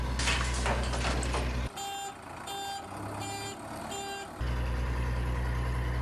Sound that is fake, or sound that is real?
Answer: real